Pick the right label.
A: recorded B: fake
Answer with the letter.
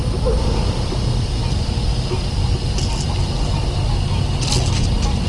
A